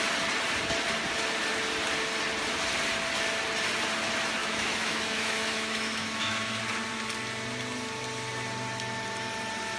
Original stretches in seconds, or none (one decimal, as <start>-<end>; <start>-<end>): 0.0-4.4; 6.6-9.8